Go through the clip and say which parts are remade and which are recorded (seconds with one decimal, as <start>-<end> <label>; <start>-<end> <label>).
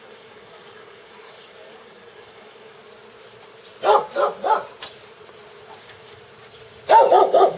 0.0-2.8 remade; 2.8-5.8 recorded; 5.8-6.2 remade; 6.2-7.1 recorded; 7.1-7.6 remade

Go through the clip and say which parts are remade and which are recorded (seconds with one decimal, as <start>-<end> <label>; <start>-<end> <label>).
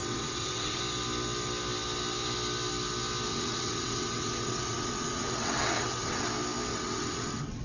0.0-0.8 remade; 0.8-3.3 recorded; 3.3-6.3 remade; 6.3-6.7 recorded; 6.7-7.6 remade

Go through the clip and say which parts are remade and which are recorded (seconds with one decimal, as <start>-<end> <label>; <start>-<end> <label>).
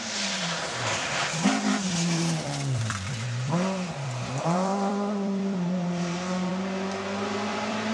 0.0-6.5 remade; 6.5-7.5 recorded; 7.5-7.9 remade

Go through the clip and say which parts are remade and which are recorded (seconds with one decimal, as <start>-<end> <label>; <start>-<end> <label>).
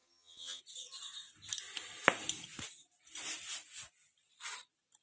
0.0-0.6 remade; 0.6-5.0 recorded